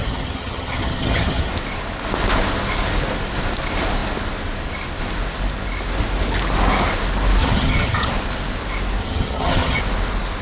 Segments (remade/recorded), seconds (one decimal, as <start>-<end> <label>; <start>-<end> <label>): 0.0-1.5 remade; 1.5-7.4 recorded; 7.4-8.1 remade; 8.1-9.0 recorded; 9.0-9.8 remade; 9.8-10.4 recorded